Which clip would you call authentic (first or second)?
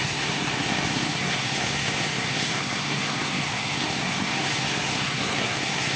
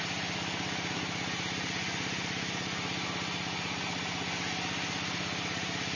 second